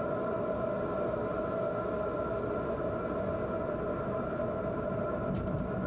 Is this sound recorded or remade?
recorded